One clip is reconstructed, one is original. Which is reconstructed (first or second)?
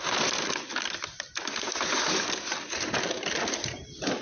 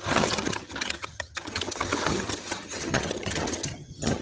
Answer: second